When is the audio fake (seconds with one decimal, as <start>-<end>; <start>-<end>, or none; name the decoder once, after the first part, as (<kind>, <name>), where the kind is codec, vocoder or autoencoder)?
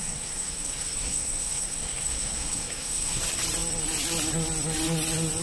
0.0-3.2 (codec, SNAC)